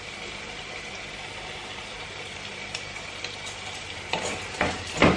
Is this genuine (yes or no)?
yes